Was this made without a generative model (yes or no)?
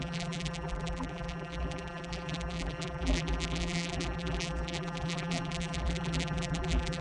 no